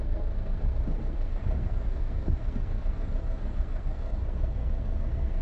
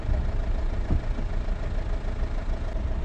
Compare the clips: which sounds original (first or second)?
second